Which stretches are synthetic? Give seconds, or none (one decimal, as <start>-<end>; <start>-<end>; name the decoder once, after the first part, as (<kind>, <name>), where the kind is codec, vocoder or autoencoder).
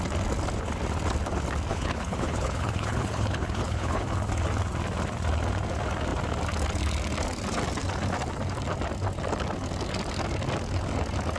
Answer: 1.7-4.0 (codec, HILCodec)